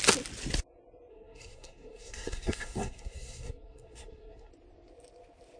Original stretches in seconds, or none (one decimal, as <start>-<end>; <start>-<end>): 0.0-1.1; 4.5-5.6